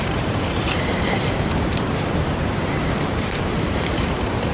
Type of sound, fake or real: fake